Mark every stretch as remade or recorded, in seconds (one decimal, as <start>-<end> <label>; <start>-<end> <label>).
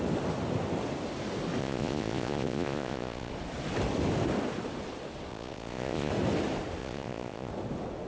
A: 0.0-1.6 recorded; 1.6-3.3 remade; 3.3-5.3 recorded; 5.3-6.1 remade; 6.1-6.8 recorded; 6.8-7.5 remade; 7.5-8.1 recorded